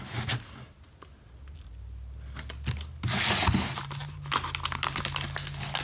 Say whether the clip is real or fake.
real